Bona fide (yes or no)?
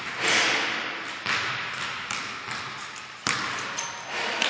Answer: yes